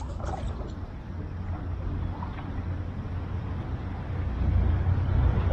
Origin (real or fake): real